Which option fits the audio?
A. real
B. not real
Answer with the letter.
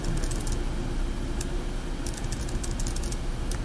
A